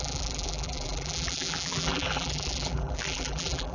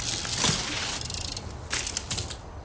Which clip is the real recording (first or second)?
second